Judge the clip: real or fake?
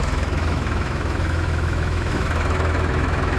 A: fake